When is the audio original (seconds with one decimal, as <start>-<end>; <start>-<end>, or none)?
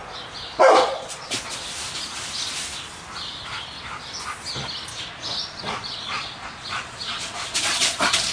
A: 0.0-0.8; 1.3-4.9